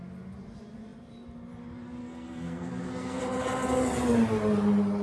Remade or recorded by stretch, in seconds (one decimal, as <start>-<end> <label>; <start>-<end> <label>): 0.0-2.0 recorded; 2.0-3.2 remade; 3.2-5.0 recorded